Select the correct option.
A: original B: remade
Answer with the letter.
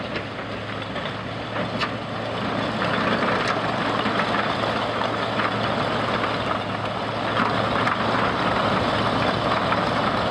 A